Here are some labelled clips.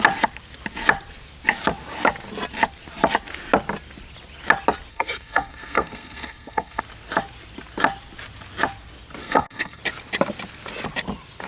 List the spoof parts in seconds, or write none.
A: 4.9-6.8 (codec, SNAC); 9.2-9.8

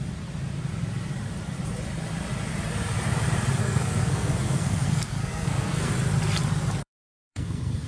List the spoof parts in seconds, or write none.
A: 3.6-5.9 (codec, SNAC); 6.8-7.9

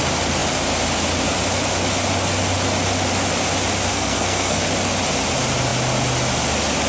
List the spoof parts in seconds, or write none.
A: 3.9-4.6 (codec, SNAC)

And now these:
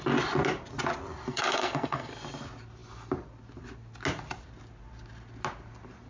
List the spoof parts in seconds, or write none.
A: 1.3-2.1 (codec, SNAC)

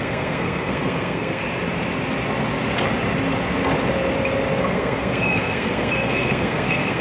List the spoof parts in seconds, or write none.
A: 0.0-1.4 (codec, SNAC); 4.6-7.0

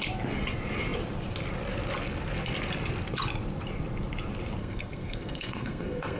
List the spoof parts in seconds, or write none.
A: 4.6-6.2 (codec, SNAC)

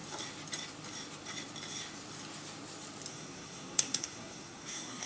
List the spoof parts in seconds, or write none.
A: 3.1-5.1 (codec, SNAC)

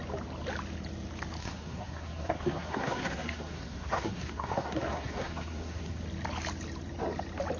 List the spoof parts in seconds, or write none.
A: 1.4-6.0 (codec, SNAC)